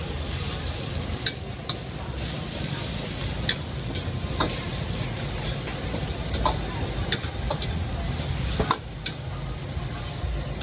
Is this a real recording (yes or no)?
yes